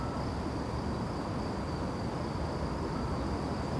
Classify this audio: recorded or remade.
recorded